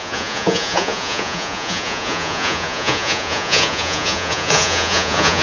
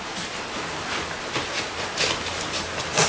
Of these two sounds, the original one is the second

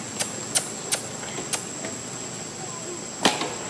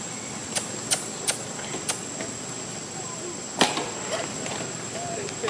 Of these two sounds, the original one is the first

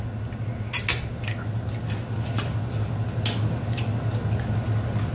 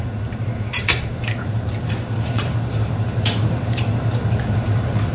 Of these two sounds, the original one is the first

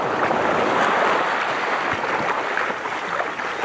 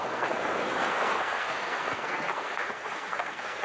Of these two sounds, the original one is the first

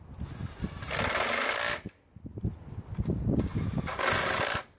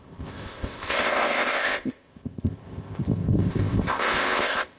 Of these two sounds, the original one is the first